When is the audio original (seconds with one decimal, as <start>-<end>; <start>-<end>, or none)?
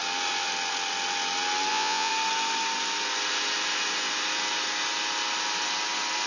0.0-1.7; 2.1-6.3